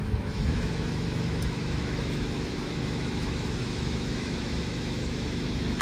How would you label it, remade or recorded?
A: remade